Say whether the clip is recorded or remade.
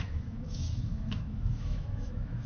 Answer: remade